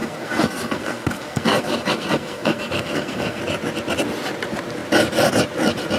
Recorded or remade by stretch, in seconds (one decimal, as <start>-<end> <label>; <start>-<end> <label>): 0.0-3.4 remade; 3.4-6.0 recorded